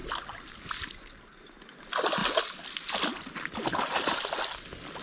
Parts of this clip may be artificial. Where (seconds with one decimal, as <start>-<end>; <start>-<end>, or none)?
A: none